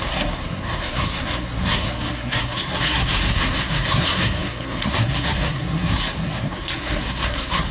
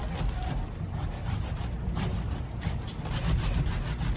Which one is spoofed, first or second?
first